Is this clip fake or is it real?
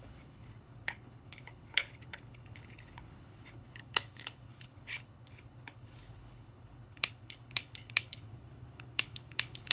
fake